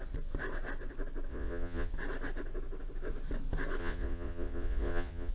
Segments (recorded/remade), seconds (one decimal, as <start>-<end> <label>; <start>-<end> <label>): 0.0-1.3 recorded; 1.3-1.9 remade; 1.9-3.8 recorded; 3.8-5.3 remade